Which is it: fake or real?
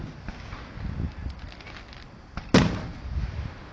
real